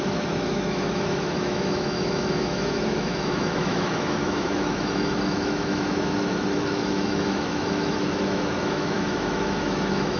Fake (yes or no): yes